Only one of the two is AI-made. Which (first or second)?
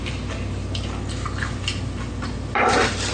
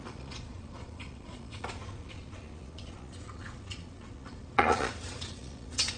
second